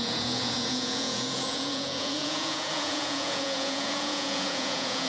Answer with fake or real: fake